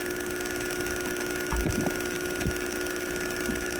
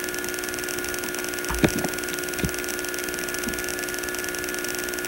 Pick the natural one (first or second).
second